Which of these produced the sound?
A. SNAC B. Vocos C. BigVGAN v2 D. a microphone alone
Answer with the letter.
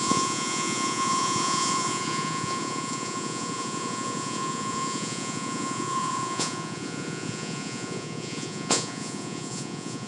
B